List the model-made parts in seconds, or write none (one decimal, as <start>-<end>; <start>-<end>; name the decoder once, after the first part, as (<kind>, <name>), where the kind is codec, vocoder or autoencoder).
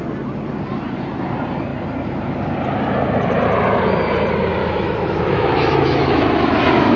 4.6-7.0 (autoencoder, DAC-VAE)